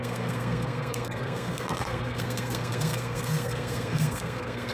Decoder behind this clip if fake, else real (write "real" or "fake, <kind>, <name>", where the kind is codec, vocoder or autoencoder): fake, codec, SNAC